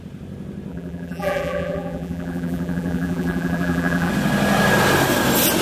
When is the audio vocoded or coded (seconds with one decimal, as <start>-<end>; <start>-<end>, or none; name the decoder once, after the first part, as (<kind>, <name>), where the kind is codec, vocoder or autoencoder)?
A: 0.7-4.1 (vocoder, BigVGAN v2)